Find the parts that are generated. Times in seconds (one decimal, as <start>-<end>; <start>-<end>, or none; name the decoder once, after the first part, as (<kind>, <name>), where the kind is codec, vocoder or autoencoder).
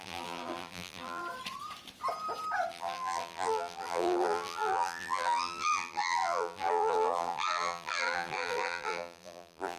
0.0-1.2 (vocoder, BigVGAN v2); 2.7-9.8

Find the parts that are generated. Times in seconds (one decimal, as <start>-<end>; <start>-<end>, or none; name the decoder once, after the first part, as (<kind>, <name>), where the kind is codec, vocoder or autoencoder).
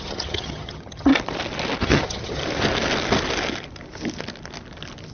0.0-1.1 (vocoder, HiFi-GAN); 1.8-2.4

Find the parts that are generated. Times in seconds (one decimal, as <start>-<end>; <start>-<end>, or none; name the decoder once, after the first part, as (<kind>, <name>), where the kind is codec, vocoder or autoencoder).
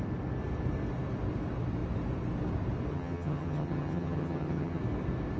2.9-4.8 (vocoder, HiFi-GAN)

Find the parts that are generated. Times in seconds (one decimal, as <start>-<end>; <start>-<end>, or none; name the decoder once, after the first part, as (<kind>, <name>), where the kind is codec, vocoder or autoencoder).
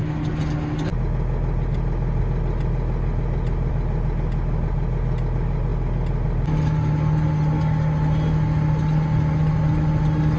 none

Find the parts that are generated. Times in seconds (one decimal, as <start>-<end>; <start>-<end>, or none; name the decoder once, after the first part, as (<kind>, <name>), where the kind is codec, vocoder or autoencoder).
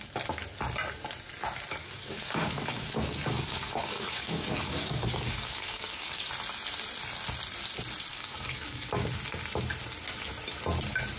1.8-6.3 (codec, DAC); 8.1-9.0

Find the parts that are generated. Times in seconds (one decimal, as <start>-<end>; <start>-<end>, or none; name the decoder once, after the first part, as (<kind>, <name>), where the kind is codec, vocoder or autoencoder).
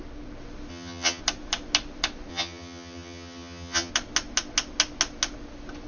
0.7-1.2 (vocoder, HiFi-GAN); 2.3-3.9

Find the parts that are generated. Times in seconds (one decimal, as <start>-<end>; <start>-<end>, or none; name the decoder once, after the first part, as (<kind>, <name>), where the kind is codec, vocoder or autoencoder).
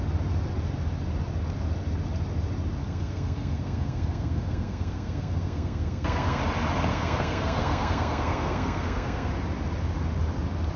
2.8-6.4 (codec, SNAC); 6.9-9.3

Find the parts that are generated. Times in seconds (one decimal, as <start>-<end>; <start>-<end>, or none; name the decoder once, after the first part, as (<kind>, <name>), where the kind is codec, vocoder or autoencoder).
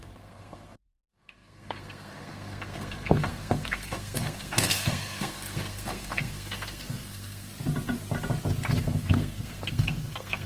0.0-7.5 (codec, SNAC); 8.8-10.5